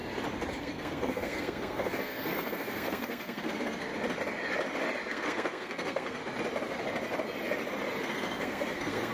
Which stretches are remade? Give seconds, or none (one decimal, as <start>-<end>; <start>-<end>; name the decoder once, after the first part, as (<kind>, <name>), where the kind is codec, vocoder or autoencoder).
0.6-3.9 (codec, SNAC); 5.1-6.2; 8.0-9.1